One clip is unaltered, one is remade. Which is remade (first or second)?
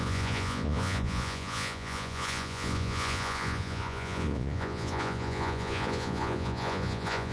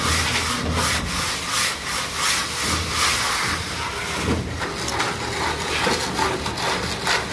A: first